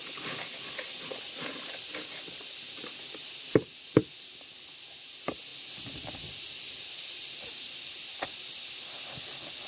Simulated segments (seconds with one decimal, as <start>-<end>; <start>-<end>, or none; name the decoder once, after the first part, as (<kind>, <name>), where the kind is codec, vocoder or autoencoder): none